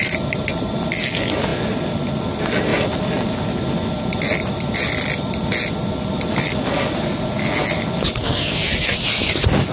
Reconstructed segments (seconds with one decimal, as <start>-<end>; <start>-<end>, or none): 8.2-8.7